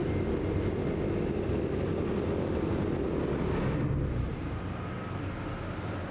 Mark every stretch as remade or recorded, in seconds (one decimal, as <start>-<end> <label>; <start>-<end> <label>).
0.0-6.1 recorded